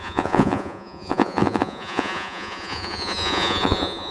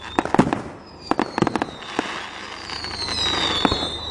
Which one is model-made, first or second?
first